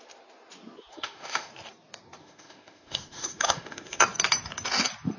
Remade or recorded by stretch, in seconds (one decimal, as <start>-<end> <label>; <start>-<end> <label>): 0.0-0.9 recorded; 0.9-1.5 remade; 1.5-2.2 recorded; 2.2-4.0 remade; 4.0-5.2 recorded